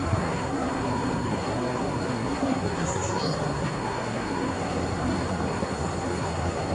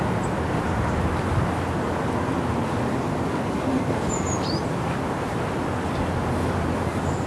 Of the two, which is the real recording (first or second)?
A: second